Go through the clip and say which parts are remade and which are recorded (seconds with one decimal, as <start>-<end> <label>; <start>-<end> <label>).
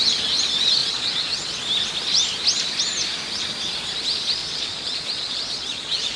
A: 0.0-0.8 recorded; 0.8-1.6 remade; 1.6-4.4 recorded; 4.4-6.2 remade